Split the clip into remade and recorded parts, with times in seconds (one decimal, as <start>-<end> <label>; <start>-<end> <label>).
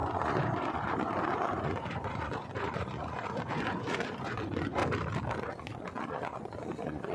0.0-4.8 remade; 4.8-5.4 recorded; 5.4-7.1 remade